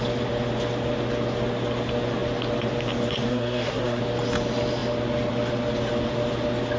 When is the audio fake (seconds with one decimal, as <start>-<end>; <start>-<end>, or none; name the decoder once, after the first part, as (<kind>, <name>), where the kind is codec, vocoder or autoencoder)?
3.3-4.0 (codec, SNAC)